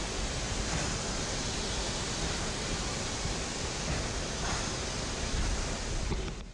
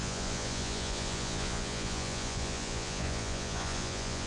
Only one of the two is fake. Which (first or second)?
second